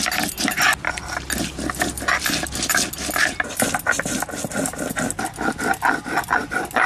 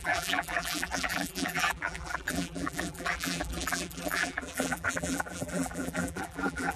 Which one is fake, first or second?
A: second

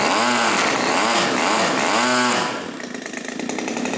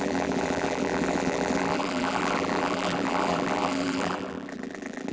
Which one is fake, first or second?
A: second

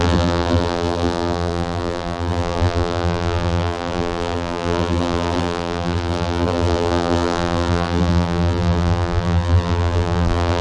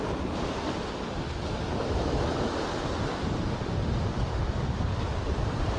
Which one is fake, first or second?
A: first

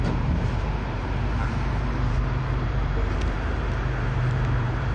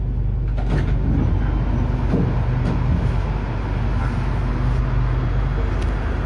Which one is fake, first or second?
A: first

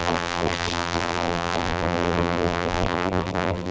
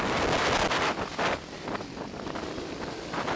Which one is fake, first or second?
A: first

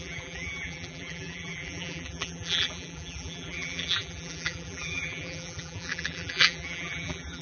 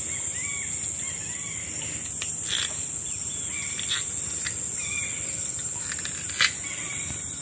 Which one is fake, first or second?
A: first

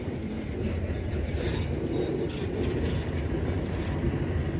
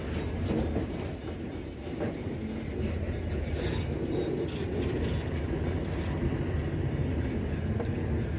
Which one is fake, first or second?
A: first